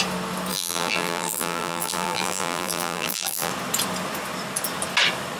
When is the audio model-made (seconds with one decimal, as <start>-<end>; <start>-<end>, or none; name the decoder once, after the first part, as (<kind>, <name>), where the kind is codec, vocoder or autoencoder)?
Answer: 0.5-3.5 (vocoder, BigVGAN v2)